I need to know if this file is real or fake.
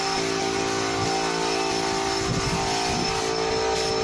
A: real